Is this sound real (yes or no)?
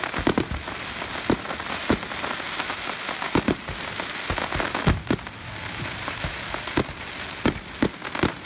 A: yes